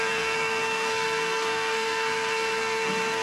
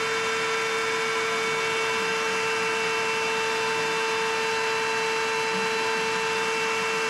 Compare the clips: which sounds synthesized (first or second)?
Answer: first